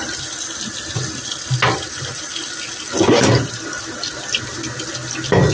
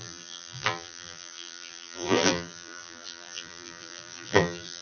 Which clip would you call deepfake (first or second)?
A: second